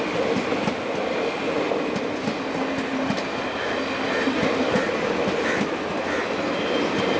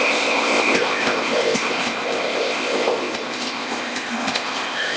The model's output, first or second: second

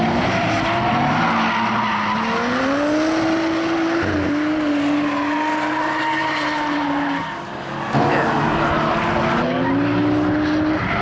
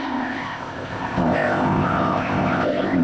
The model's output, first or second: second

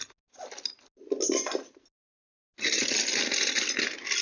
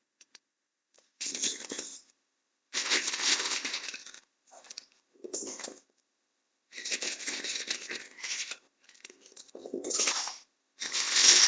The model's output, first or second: second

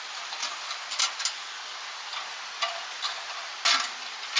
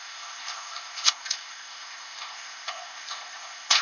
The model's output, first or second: second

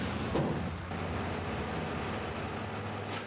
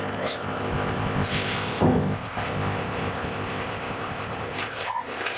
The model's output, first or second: second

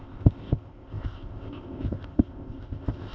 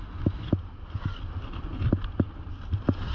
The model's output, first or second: first